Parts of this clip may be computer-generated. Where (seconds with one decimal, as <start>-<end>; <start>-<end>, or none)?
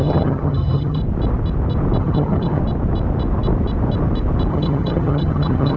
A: 0.0-1.0; 2.0-2.6; 4.5-5.8